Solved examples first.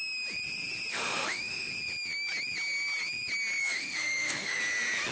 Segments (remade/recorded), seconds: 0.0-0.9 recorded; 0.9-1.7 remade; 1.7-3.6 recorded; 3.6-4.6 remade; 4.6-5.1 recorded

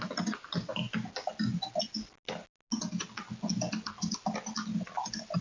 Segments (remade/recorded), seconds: 0.0-5.4 recorded

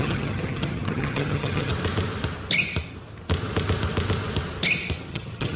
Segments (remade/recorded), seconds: 0.0-1.7 remade; 1.7-5.1 recorded; 5.1-5.6 remade

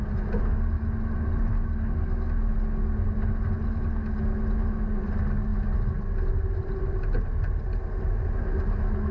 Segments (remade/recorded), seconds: 0.0-9.1 recorded